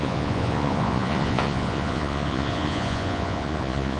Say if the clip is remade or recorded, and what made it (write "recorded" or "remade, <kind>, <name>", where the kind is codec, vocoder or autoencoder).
remade, vocoder, Vocos